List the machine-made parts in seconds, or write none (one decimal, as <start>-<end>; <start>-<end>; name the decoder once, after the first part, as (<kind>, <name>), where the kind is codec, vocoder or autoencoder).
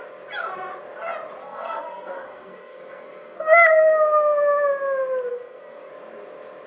1.4-3.7 (codec, SNAC); 5.3-5.9